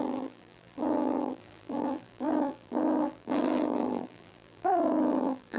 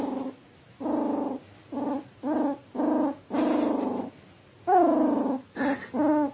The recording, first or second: second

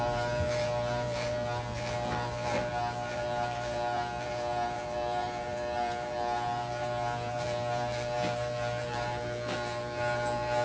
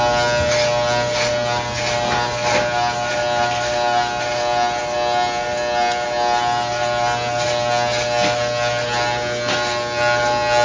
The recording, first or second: second